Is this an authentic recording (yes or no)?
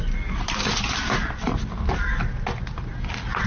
yes